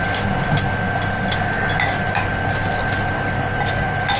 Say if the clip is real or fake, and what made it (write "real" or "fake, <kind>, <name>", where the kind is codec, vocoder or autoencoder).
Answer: real